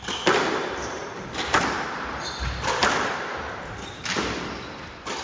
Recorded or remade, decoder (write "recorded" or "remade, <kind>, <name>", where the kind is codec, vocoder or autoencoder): recorded